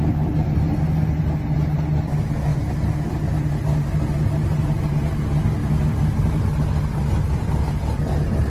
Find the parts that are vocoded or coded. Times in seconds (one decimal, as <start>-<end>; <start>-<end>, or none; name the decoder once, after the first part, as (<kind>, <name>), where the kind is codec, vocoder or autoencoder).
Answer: 2.5-3.5 (vocoder, BigVGAN v2); 5.6-6.4